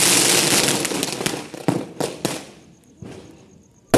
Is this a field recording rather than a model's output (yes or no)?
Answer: yes